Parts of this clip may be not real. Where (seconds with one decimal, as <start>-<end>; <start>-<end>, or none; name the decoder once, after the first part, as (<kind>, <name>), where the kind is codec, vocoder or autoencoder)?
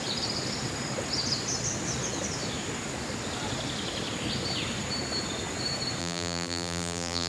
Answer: 6.0-7.3 (vocoder, BigVGAN v2)